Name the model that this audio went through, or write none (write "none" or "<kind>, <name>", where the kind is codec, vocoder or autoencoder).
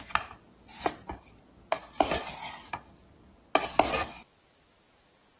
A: none